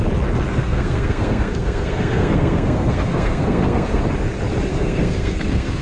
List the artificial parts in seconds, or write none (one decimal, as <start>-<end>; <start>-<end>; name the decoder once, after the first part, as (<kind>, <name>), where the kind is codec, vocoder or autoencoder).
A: 0.5-4.0 (codec, SNAC); 4.7-5.8